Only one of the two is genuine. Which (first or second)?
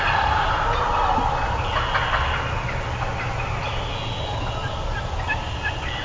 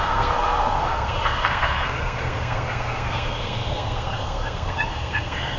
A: first